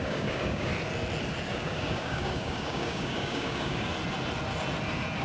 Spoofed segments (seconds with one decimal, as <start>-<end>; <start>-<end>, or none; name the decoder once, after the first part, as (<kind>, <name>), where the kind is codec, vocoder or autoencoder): 0.0-0.7 (codec, DAC); 1.5-3.9